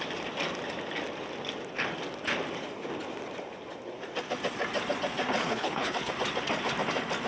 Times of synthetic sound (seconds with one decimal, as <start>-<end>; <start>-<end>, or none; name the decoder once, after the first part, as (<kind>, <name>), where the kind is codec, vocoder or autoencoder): 5.4-6.1 (codec, HILCodec)